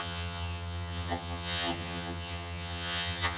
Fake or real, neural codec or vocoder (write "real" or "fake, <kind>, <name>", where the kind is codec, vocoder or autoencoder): fake, vocoder, HiFi-GAN